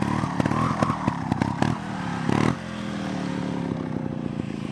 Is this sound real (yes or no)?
yes